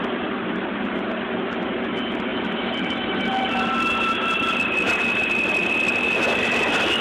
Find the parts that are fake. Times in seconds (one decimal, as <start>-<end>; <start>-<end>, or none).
0.0-0.7; 2.3-3.5; 5.6-6.6